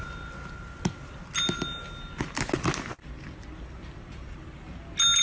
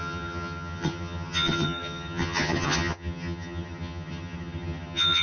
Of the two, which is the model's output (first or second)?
second